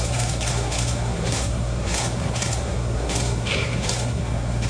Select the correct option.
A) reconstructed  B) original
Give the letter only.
A